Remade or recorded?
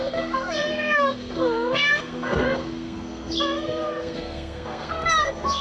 remade